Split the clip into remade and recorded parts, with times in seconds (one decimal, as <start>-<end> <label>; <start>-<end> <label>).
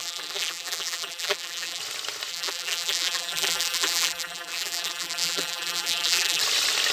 0.0-1.8 remade; 1.8-2.3 recorded; 2.3-6.4 remade; 6.4-6.9 recorded